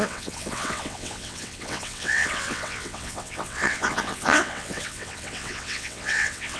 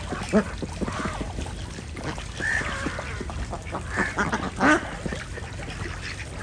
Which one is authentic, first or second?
second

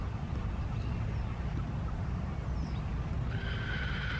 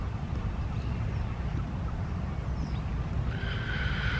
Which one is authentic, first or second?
first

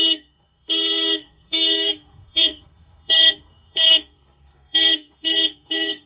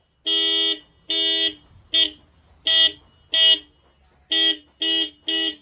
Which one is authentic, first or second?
second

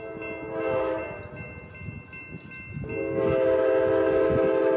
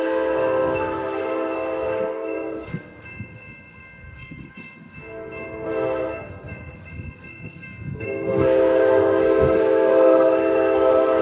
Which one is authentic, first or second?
first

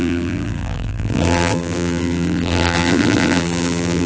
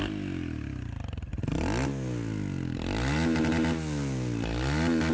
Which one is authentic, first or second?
second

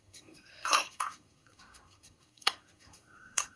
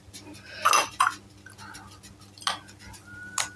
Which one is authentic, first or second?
second